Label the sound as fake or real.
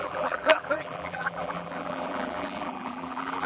fake